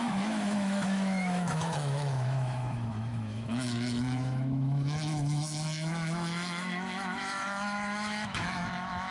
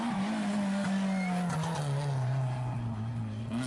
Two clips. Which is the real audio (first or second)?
second